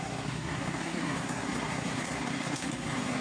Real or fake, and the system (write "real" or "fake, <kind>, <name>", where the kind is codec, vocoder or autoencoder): fake, codec, SNAC